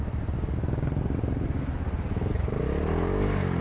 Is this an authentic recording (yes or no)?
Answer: yes